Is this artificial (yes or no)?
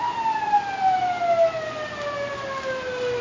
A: no